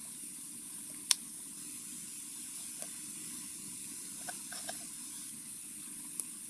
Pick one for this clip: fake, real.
real